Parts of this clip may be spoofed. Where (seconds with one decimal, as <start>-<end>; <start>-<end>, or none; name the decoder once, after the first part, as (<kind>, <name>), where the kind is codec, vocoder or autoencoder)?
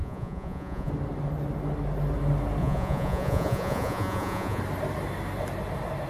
0.0-0.9 (vocoder, Vocos); 2.6-4.6